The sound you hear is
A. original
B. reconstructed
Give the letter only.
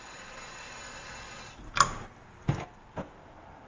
A